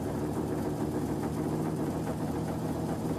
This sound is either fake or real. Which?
fake